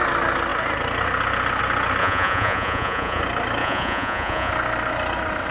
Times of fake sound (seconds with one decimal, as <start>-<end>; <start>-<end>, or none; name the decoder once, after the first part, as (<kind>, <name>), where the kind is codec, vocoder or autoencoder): 2.0-3.2 (vocoder, Vocos); 3.6-4.5